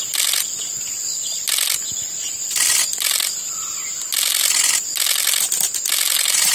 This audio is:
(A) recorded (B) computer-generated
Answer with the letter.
A